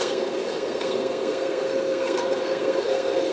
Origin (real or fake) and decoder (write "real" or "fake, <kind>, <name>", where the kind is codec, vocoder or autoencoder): fake, codec, SNAC